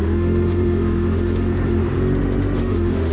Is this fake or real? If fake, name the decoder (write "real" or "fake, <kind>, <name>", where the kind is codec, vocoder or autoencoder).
fake, autoencoder, DAC-VAE